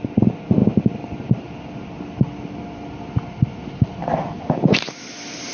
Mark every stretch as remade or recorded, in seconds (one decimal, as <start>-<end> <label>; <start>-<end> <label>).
0.0-5.5 recorded